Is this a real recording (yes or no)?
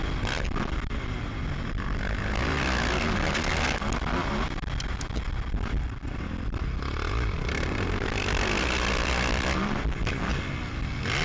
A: yes